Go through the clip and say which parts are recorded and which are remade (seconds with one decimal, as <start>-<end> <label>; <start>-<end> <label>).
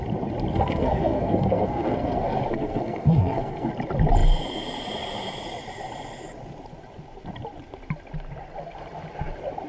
0.0-0.5 recorded; 0.5-3.7 remade; 3.7-9.7 recorded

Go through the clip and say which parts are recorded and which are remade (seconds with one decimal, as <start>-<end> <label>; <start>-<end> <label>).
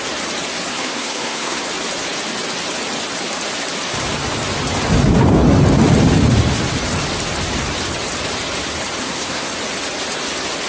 0.0-0.7 recorded; 0.7-1.7 remade; 1.7-9.0 recorded; 9.0-9.5 remade; 9.5-10.7 recorded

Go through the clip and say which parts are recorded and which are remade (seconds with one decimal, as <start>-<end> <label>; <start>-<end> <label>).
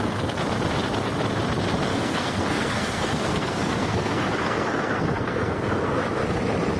0.0-1.9 recorded; 1.9-6.0 remade; 6.0-6.8 recorded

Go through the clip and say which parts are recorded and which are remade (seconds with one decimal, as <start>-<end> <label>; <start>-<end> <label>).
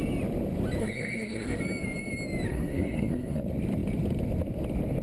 0.0-0.8 recorded; 0.8-1.6 remade; 1.6-2.5 recorded; 2.5-3.4 remade; 3.4-5.0 recorded